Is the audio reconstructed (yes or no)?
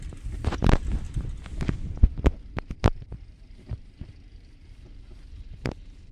no